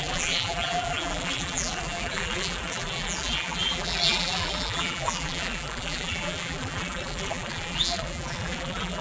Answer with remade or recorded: remade